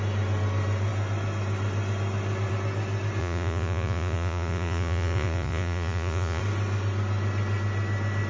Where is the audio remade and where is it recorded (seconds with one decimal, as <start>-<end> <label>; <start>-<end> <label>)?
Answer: 0.0-3.2 recorded; 3.2-6.4 remade; 6.4-8.3 recorded